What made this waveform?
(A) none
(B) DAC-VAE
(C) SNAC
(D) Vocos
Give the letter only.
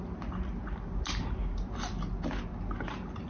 A